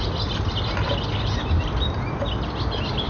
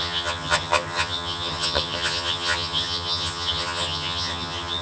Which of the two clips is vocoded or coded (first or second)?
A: second